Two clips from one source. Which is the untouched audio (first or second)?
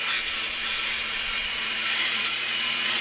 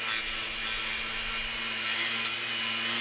second